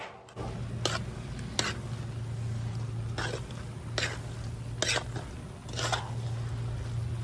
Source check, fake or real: real